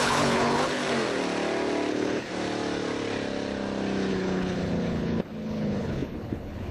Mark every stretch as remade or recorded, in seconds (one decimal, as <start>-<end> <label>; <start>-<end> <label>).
0.0-0.8 remade; 0.8-1.9 recorded; 1.9-2.3 remade; 2.3-4.1 recorded; 4.1-6.7 remade